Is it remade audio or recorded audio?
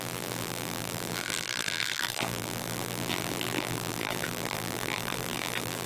remade